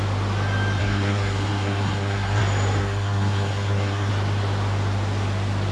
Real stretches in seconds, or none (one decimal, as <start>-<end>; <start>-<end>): 0.0-0.8; 2.4-2.8; 4.1-5.7